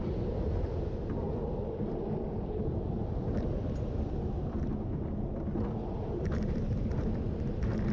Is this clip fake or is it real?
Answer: real